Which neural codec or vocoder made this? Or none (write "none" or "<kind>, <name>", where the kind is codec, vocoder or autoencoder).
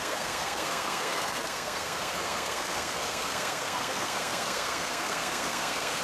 codec, SNAC